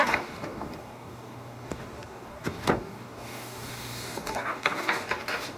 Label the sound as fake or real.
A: fake